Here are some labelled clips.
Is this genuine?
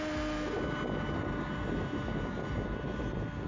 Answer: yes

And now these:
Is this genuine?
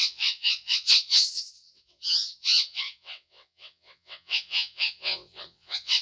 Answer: no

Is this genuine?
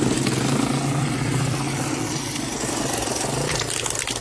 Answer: yes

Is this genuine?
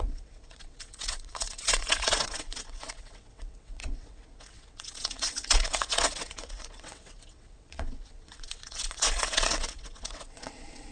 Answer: no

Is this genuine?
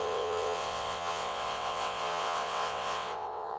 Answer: no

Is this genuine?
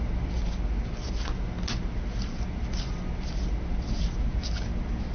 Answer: yes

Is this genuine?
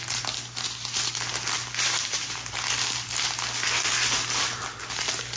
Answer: yes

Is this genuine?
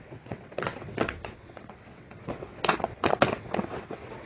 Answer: no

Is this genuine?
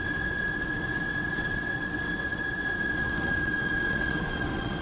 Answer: no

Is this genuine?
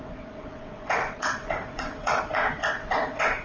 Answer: no